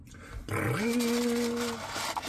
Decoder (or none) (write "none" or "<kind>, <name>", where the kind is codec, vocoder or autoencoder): none